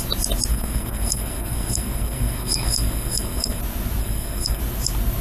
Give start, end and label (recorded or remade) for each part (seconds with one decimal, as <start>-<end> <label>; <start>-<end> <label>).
0.0-0.5 recorded; 0.5-3.6 remade; 3.6-4.0 recorded; 4.0-4.6 remade; 4.6-5.2 recorded